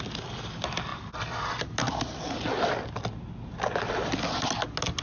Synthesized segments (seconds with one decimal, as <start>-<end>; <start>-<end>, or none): none